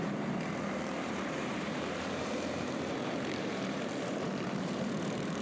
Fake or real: fake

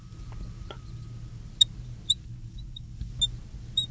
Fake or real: real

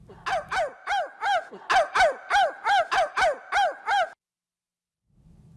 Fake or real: real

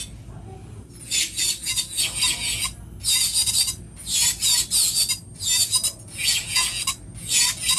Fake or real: real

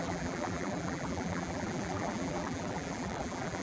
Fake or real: fake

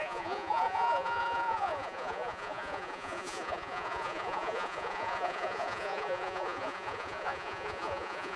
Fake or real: fake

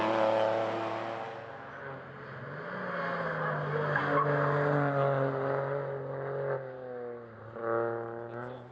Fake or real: real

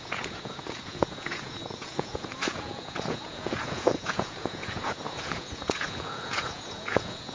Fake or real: fake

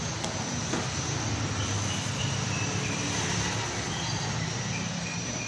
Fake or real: real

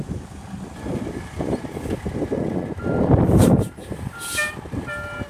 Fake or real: real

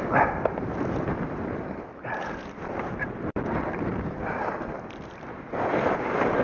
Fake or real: fake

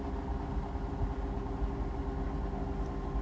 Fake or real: real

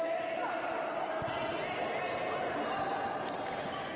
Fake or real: real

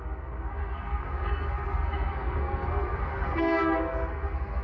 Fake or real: fake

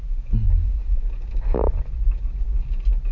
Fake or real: real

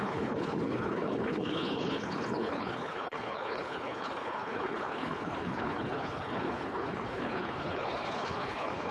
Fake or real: fake